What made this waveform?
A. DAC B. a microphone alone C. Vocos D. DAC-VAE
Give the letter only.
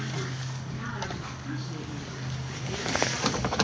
A